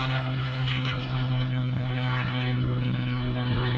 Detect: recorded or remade remade